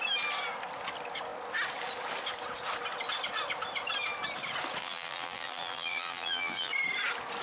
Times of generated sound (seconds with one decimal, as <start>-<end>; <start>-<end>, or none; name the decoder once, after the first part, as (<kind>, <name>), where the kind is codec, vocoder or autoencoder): 4.8-6.7 (vocoder, BigVGAN v2)